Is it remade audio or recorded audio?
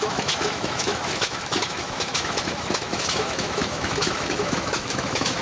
remade